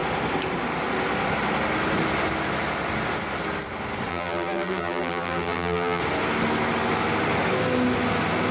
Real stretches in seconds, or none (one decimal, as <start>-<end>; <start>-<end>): 0.0-4.1; 6.0-8.5